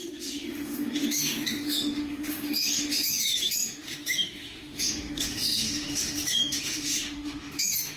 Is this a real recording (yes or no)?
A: no